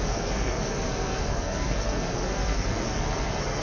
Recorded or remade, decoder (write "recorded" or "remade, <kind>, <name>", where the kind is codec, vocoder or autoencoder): remade, codec, SNAC